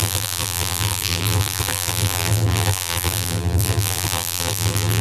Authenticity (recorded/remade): remade